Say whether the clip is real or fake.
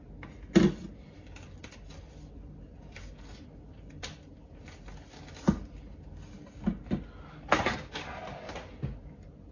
real